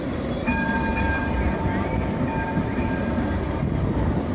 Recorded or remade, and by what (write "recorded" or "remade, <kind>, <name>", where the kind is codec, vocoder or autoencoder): remade, vocoder, BigVGAN v2